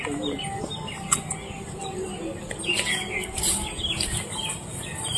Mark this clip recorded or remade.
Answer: recorded